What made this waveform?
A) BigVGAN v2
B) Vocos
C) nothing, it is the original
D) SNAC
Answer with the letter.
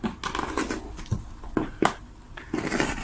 C